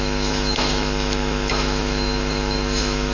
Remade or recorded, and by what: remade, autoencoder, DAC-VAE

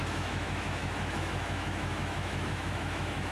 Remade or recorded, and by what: remade, autoencoder, DAC-VAE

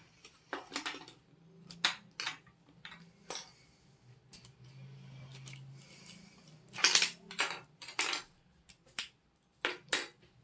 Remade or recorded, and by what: recorded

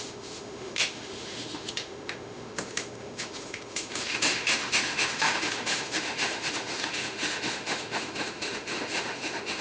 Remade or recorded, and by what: remade, autoencoder, DAC-VAE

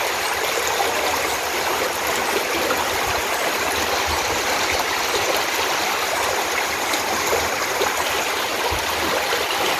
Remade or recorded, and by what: recorded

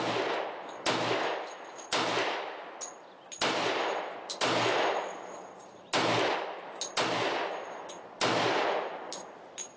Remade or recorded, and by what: recorded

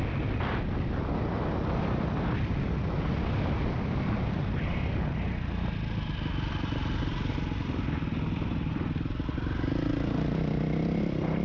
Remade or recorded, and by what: recorded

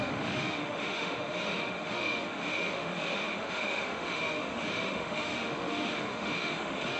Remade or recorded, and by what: remade, autoencoder, DAC-VAE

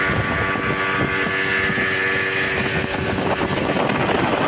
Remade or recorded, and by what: recorded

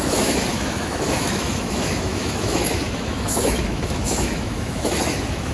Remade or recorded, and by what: remade, autoencoder, DAC-VAE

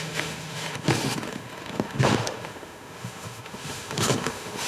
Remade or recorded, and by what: remade, autoencoder, DAC-VAE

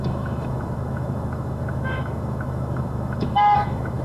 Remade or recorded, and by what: remade, autoencoder, DAC-VAE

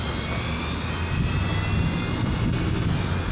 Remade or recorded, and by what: recorded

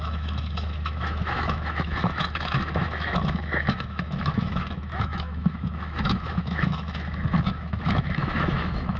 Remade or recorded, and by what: remade, autoencoder, DAC-VAE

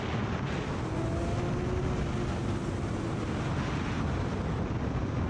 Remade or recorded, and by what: recorded